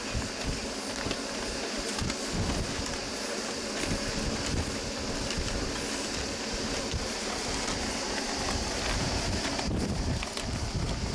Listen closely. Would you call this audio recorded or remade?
recorded